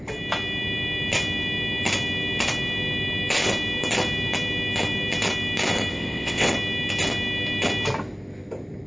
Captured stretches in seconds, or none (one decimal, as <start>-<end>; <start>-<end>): 0.0-5.9; 6.5-8.9